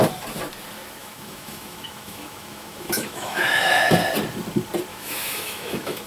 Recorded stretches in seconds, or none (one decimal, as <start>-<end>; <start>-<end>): 0.0-1.0; 3.9-4.9